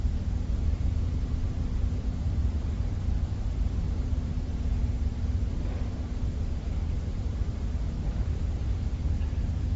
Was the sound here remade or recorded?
remade